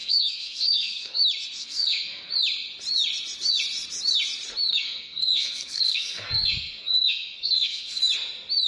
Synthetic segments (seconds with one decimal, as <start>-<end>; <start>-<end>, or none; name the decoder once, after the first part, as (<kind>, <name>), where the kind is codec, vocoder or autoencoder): 0.0-1.2 (codec, SNAC); 1.6-2.3; 4.7-8.0